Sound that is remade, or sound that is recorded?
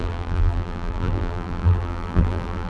remade